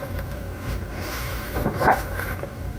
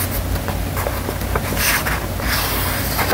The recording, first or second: second